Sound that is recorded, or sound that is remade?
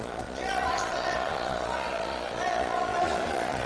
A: remade